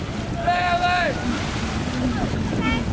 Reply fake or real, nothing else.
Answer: real